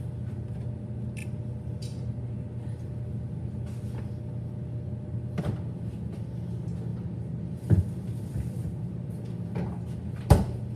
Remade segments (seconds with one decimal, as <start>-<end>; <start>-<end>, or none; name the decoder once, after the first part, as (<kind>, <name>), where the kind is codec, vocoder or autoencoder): 6.9-8.9 (vocoder, BigVGAN v2)

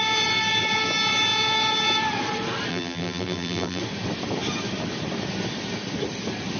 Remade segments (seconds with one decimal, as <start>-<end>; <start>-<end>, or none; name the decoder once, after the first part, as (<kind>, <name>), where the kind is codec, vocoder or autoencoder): 2.7-3.8 (vocoder, BigVGAN v2)

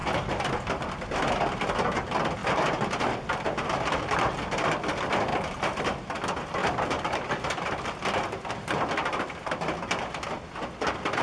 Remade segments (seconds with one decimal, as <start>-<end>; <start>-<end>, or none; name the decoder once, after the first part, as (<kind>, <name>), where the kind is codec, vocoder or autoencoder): 0.0-1.7 (vocoder, BigVGAN v2); 2.4-3.0; 6.6-8.1

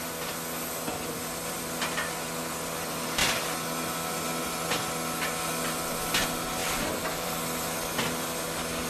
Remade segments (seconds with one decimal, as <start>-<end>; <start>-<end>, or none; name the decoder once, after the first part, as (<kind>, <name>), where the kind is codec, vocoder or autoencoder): 6.6-7.4 (vocoder, BigVGAN v2)